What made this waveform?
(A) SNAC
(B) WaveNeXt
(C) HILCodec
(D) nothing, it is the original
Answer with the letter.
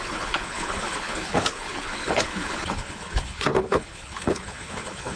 C